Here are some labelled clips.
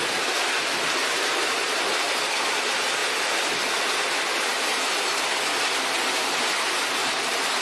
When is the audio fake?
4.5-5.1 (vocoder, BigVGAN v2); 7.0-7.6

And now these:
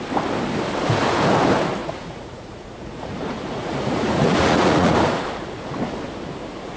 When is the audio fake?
1.8-4.9 (vocoder, Vocos)